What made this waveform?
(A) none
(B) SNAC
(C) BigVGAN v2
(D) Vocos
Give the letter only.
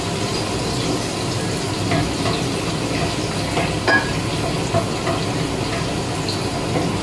A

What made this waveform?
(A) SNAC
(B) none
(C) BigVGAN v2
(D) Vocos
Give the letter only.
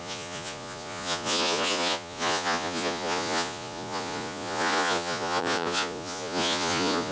D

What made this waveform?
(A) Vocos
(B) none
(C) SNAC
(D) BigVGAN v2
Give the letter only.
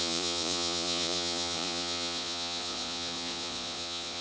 A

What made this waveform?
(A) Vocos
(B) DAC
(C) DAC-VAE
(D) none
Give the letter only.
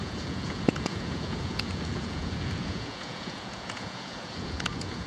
A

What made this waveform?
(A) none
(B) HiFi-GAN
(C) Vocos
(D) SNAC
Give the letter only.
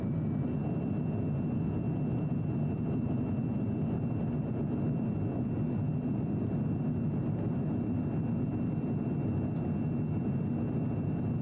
A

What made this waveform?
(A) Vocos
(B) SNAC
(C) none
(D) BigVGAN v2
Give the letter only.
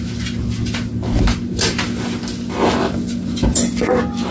C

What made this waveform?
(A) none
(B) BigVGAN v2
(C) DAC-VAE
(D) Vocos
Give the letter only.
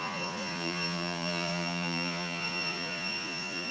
D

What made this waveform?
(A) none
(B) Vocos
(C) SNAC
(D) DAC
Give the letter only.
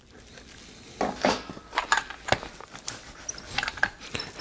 A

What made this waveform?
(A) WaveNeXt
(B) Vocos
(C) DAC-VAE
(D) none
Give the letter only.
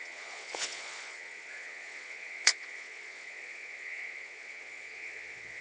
B